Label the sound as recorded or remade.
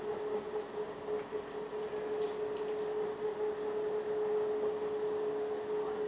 recorded